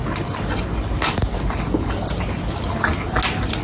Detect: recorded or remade recorded